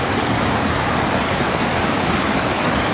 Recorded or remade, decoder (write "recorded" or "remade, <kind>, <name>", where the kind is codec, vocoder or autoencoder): remade, codec, DAC